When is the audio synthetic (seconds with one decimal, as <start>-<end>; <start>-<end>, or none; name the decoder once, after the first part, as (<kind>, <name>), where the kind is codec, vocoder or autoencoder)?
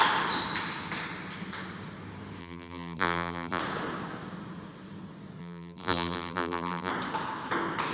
2.4-3.6 (vocoder, BigVGAN v2); 5.4-6.9